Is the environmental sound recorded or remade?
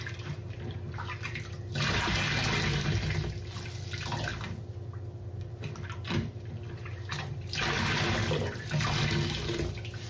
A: recorded